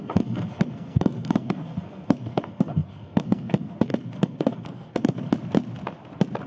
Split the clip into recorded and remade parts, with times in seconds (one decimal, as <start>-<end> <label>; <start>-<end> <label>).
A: 0.0-5.3 remade; 5.3-6.5 recorded